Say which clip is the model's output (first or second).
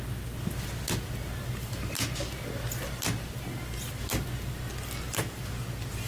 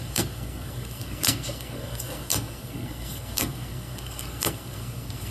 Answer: second